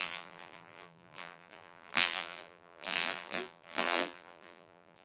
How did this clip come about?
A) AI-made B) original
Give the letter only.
A